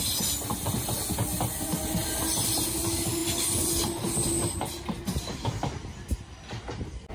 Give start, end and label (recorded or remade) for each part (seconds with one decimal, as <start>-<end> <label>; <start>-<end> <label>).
0.0-7.1 recorded